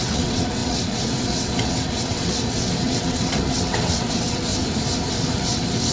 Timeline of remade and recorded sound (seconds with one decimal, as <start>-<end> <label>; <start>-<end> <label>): 0.0-4.5 remade; 4.5-5.1 recorded; 5.1-5.9 remade